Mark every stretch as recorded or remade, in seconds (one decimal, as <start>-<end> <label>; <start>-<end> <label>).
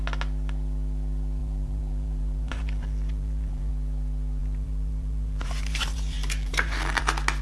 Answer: 0.0-1.4 recorded; 1.4-3.7 remade; 3.7-4.4 recorded; 4.4-7.0 remade; 7.0-7.4 recorded